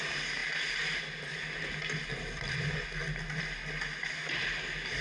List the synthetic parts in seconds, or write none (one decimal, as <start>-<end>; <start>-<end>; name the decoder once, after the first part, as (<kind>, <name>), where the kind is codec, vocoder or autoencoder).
none